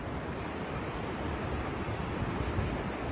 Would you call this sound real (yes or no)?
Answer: yes